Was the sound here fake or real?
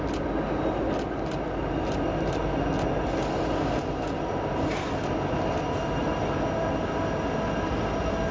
real